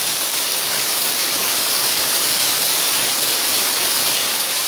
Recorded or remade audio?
remade